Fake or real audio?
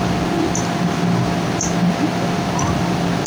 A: real